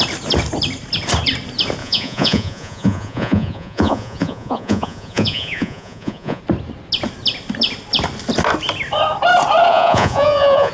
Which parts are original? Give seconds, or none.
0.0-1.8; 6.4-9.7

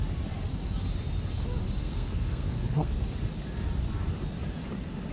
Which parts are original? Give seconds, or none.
0.0-1.8; 2.9-5.1

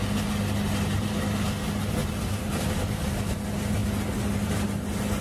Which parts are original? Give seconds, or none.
0.0-2.0; 2.8-5.2

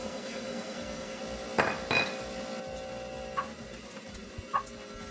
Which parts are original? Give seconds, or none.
1.2-5.1

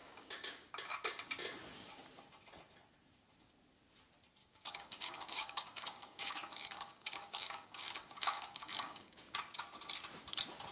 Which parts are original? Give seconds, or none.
0.7-4.4; 9.6-10.7